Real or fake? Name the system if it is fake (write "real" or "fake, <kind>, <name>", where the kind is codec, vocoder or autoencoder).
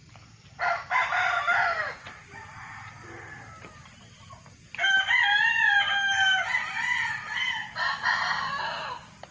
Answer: real